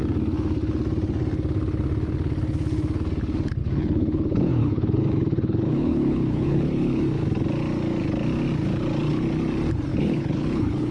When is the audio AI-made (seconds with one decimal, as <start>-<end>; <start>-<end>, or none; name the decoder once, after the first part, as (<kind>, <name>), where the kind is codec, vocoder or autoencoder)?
3.6-7.0 (codec, HILCodec); 9.9-10.9